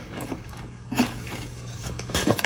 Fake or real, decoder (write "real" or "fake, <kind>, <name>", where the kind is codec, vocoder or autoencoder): fake, codec, DAC